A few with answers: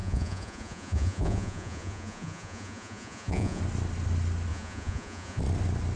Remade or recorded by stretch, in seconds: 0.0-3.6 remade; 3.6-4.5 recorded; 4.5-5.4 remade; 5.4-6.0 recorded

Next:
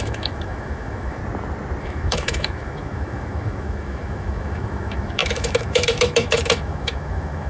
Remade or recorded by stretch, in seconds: 0.0-1.2 remade; 1.2-1.8 recorded; 1.8-7.5 remade